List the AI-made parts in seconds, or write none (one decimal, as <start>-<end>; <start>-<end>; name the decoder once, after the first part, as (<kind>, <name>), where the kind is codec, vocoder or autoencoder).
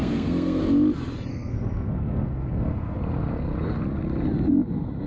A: 0.0-0.6 (codec, SNAC); 1.3-3.0